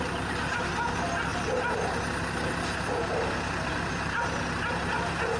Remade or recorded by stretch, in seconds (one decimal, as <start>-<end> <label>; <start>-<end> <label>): 0.0-5.4 recorded